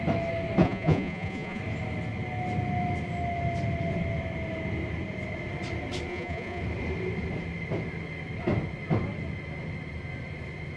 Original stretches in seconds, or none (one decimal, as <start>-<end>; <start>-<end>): 0.0-0.6; 1.6-6.1; 6.6-10.8